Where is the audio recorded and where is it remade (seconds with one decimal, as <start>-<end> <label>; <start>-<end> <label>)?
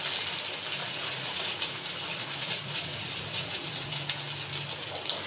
0.0-0.8 recorded; 0.8-4.0 remade; 4.0-5.3 recorded